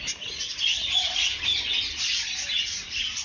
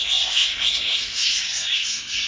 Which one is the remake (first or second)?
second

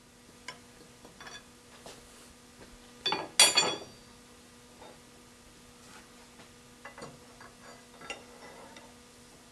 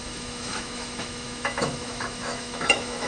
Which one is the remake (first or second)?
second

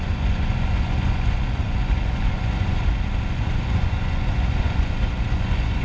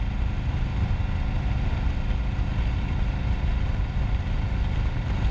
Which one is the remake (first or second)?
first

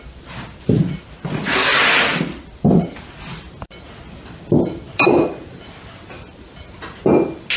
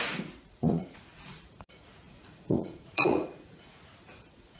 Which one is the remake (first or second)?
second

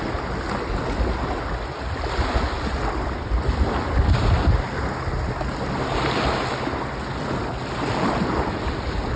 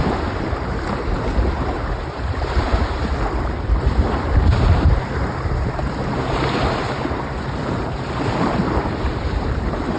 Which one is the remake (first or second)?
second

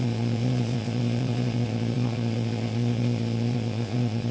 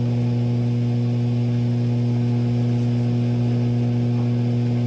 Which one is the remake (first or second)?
first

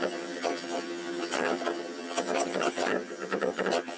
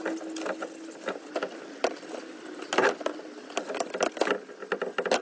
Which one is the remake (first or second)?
first